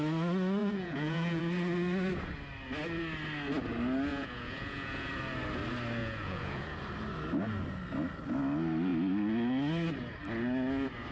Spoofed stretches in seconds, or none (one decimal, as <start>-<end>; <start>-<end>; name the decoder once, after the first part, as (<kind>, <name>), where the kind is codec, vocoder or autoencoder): 0.6-1.4 (vocoder, Vocos); 4.1-5.1; 6.0-6.8